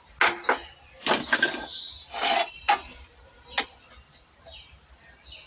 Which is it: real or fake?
real